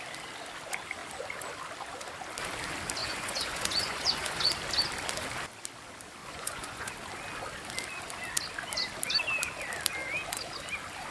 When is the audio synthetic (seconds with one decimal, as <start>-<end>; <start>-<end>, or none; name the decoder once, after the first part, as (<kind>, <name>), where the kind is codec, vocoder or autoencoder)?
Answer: 3.0-4.5 (vocoder, Vocos); 6.2-6.9